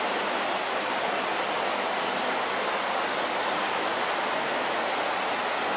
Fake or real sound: real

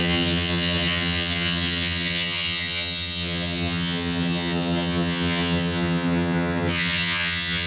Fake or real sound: fake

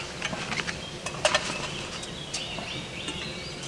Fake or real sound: real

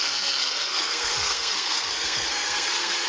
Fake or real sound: fake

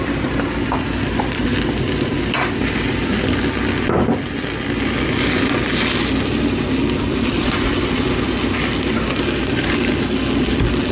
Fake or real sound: real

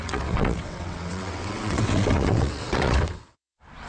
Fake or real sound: fake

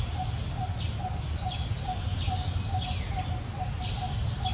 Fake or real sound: real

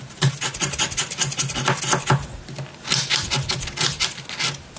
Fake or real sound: real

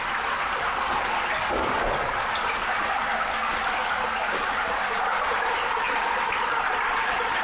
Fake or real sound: real